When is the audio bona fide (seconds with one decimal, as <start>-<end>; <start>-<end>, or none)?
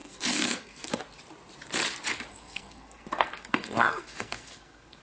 1.0-2.3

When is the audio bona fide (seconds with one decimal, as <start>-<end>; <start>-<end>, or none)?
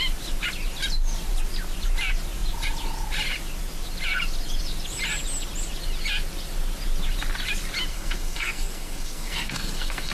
0.0-7.9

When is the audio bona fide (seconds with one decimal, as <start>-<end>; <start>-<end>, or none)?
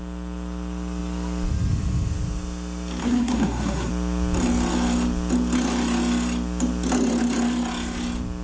0.0-3.0; 3.9-8.4